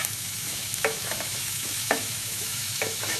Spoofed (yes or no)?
yes